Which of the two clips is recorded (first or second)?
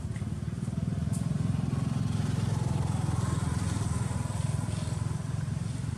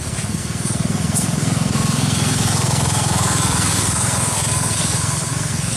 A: first